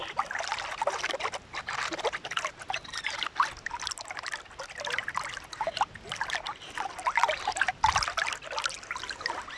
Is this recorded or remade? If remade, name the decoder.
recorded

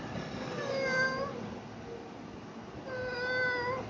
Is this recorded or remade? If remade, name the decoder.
recorded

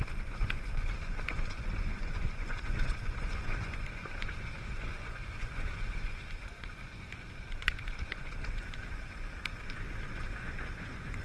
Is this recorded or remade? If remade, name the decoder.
remade, vocoder, Vocos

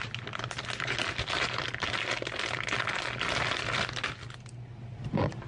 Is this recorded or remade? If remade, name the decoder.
recorded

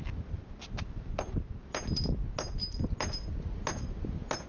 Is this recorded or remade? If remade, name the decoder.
recorded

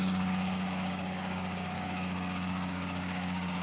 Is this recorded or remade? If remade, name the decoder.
remade, codec, DAC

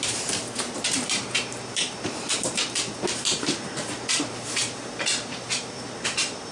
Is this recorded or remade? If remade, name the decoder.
remade, vocoder, BigVGAN v2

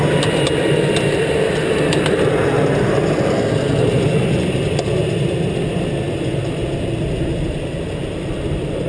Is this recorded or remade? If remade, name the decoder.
recorded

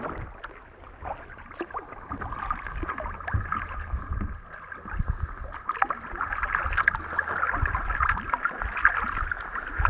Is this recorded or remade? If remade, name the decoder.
recorded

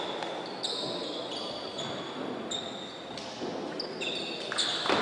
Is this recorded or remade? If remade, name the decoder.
recorded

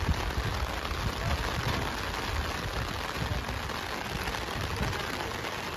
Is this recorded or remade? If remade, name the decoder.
recorded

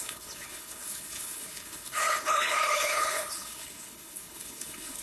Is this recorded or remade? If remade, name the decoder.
remade, codec, HILCodec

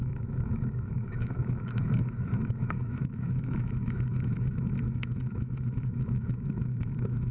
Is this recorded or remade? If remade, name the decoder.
remade, autoencoder, DAC-VAE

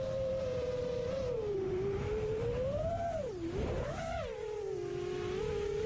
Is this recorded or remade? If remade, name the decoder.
remade, vocoder, BigVGAN v2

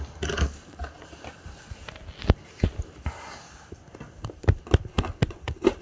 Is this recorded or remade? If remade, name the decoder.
recorded